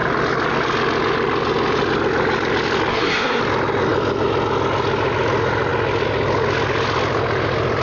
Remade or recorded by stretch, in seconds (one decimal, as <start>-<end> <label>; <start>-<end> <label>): 0.0-2.9 recorded; 2.9-3.4 remade; 3.4-7.8 recorded